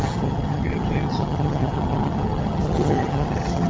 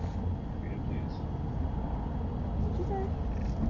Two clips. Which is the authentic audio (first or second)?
second